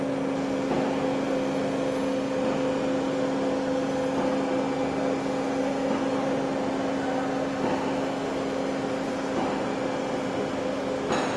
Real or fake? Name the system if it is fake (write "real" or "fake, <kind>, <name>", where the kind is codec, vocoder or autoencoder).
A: real